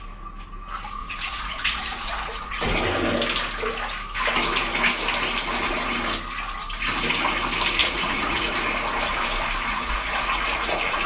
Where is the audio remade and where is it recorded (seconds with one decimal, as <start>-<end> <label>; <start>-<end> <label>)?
0.0-1.0 recorded; 1.0-2.7 remade; 2.7-7.8 recorded; 7.8-8.5 remade; 8.5-9.7 recorded; 9.7-11.1 remade